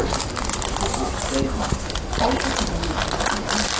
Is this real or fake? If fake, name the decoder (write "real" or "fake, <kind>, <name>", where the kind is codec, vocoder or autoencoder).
real